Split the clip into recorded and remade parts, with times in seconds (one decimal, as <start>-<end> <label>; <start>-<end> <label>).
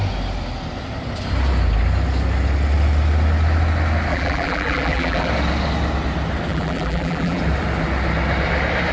0.0-4.1 recorded; 4.1-5.3 remade; 5.3-6.5 recorded; 6.5-7.4 remade; 7.4-8.9 recorded